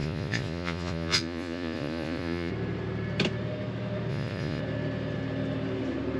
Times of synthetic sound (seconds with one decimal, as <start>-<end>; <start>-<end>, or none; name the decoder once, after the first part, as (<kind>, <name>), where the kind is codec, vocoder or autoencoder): 0.0-2.5 (vocoder, Vocos); 4.1-4.6